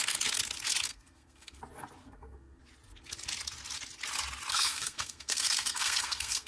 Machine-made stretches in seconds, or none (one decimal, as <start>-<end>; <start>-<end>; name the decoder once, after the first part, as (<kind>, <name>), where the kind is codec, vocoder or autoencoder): 0.9-1.6 (codec, SNAC); 2.0-2.6; 4.5-6.5